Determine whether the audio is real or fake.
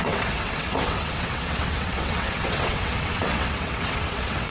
fake